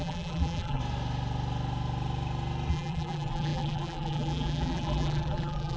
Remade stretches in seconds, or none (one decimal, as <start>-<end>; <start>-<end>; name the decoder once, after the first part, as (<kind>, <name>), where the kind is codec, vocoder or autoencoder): 0.0-0.8 (vocoder, BigVGAN v2); 2.7-5.8